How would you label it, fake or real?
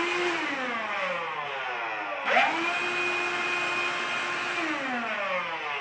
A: real